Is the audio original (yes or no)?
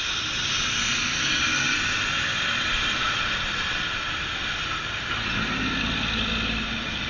yes